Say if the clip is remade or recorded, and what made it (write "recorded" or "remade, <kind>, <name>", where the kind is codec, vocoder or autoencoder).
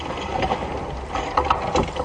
recorded